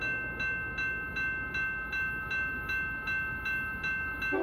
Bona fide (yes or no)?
yes